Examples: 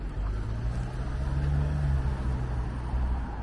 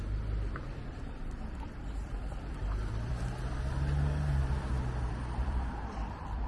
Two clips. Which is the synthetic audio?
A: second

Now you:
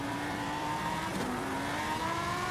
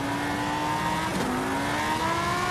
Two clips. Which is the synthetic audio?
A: first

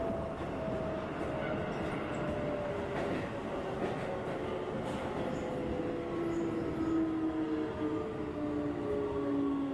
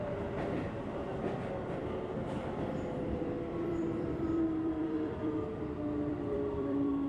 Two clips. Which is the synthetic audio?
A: second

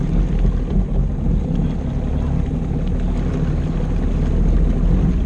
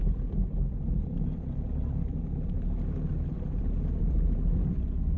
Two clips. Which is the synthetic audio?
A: second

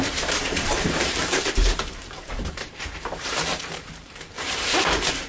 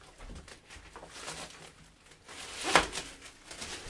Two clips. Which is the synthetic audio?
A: first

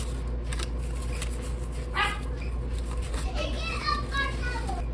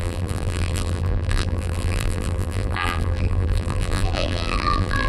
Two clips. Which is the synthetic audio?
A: second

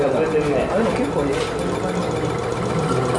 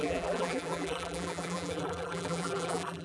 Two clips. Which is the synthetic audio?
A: second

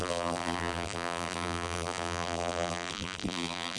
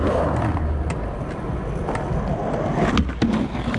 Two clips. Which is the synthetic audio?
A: first